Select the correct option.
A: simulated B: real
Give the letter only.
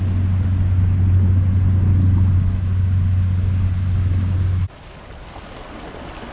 B